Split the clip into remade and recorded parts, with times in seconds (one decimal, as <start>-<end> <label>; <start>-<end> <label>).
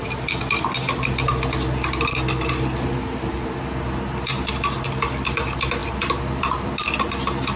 0.0-7.6 recorded